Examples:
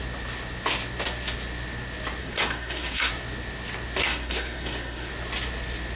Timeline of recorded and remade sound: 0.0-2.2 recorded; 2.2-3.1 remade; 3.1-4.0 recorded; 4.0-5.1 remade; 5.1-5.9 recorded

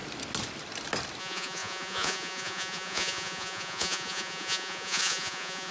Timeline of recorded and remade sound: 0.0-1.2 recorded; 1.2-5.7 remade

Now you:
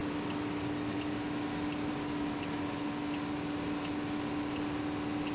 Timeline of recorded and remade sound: 0.0-5.3 recorded

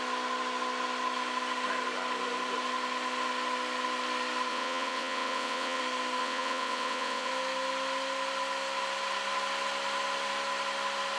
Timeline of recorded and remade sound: 0.0-4.5 recorded; 4.5-5.8 remade; 5.8-6.2 recorded; 6.2-7.3 remade; 7.3-11.2 recorded